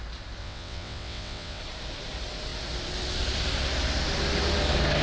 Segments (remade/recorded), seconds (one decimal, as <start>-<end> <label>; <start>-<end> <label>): 0.0-0.4 recorded; 0.4-1.6 remade; 1.6-5.0 recorded